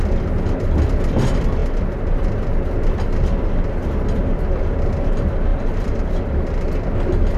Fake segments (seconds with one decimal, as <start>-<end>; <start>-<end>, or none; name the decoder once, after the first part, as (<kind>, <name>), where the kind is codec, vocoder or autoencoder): 5.5-6.1 (vocoder, BigVGAN v2)